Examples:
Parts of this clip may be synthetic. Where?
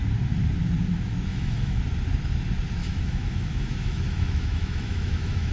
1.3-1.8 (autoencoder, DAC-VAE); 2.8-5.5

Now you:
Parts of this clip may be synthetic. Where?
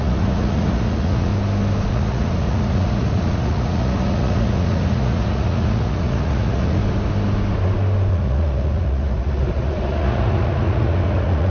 0.0-1.3 (vocoder, Vocos); 1.9-6.8; 8.1-11.5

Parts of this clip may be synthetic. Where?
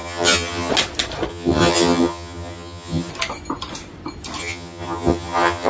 0.0-0.7 (vocoder, HiFi-GAN); 1.3-3.1; 4.4-5.7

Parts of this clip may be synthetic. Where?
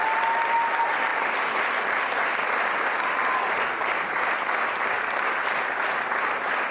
none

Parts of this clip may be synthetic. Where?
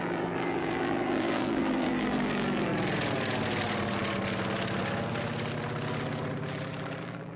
0.0-2.7 (vocoder, BigVGAN v2); 7.0-7.4